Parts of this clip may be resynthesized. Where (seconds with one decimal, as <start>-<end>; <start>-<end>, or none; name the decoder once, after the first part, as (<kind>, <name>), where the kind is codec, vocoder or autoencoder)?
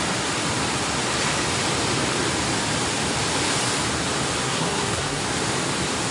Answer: 4.4-5.2 (codec, SNAC)